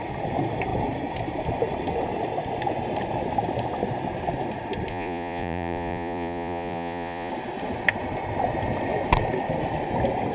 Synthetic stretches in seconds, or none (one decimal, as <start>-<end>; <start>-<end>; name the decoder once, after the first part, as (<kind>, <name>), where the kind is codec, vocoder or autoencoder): 4.9-7.3 (vocoder, Vocos)